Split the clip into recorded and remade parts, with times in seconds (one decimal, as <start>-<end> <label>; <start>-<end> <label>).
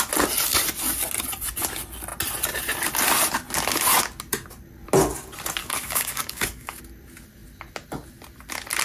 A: 0.0-5.6 recorded; 5.6-6.8 remade; 6.8-8.8 recorded